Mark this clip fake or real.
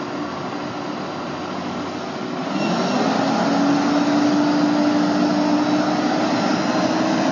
real